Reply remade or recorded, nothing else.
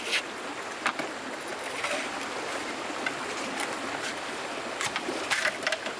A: recorded